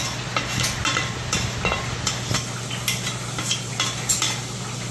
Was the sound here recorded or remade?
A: recorded